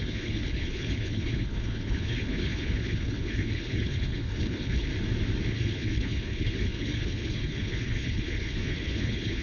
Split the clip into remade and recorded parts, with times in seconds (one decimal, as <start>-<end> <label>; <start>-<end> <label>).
0.0-4.9 remade; 4.9-5.5 recorded; 5.5-9.4 remade